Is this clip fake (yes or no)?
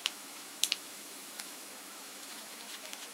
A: yes